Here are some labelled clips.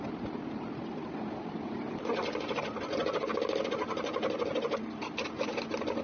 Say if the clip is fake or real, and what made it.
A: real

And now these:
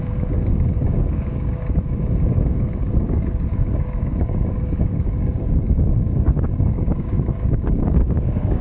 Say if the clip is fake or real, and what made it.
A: fake, codec, DAC